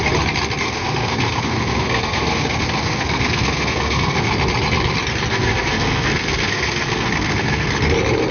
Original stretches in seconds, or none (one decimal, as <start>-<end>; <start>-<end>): 0.0-0.6; 4.3-5.3; 7.7-8.3